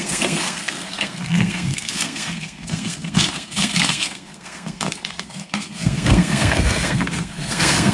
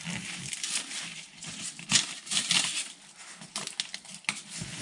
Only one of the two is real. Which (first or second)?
second